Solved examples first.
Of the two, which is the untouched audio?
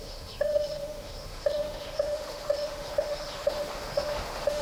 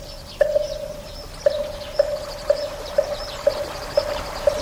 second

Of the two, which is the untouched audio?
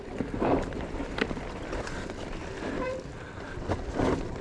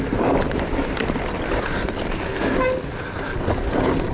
second